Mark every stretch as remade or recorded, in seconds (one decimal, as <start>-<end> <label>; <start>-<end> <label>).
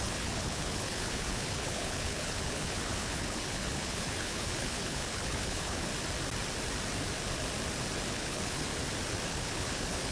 0.0-5.9 remade; 5.9-8.1 recorded; 8.1-8.7 remade; 8.7-9.3 recorded; 9.3-10.1 remade